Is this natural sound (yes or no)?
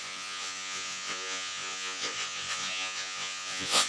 no